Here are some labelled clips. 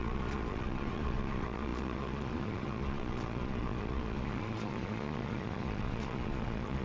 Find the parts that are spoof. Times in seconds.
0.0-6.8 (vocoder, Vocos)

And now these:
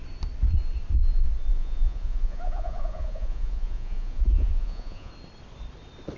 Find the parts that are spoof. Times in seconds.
1.5-5.1 (vocoder, Vocos)

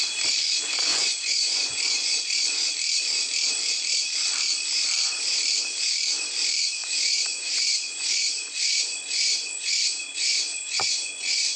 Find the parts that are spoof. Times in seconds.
0.9-2.7 (vocoder, Vocos); 6.8-11.6

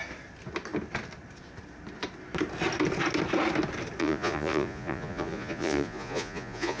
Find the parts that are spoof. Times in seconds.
4.0-6.8 (vocoder, Vocos)

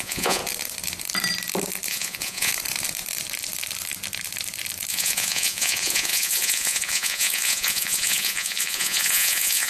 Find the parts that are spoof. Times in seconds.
0.0-0.4 (vocoder, Vocos); 1.9-2.5; 4.9-9.7

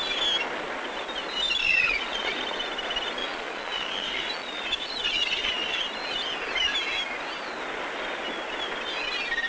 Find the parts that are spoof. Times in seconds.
1.6-2.4 (vocoder, Vocos); 3.2-5.8

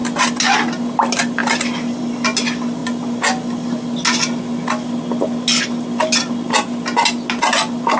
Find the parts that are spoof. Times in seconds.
none

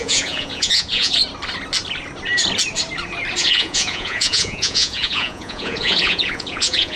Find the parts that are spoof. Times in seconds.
0.0-1.2 (vocoder, Vocos); 3.4-7.0